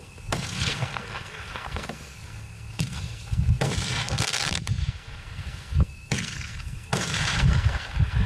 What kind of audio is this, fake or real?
fake